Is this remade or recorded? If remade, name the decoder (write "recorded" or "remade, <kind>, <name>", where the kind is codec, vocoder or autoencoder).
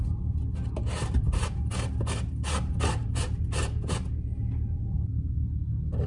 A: recorded